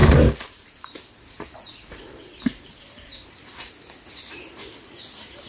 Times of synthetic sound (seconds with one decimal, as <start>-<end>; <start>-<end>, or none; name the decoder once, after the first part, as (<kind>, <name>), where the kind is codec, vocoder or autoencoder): 0.0-3.3 (vocoder, BigVGAN v2)